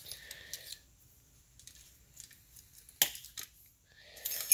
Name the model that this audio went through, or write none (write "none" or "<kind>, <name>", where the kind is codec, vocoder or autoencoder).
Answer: none